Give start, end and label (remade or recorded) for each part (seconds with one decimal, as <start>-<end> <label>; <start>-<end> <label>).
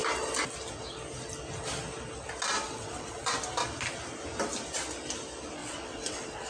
0.0-2.5 recorded; 2.5-3.4 remade; 3.4-5.6 recorded; 5.6-6.5 remade